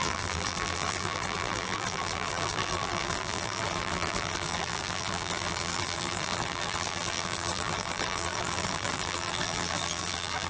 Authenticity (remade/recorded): remade